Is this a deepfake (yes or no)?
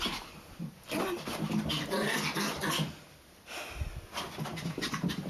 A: no